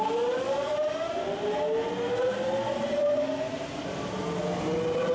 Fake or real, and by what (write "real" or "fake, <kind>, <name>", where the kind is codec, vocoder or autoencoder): real